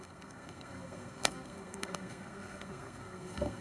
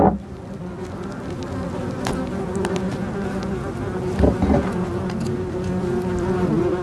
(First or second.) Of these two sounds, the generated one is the first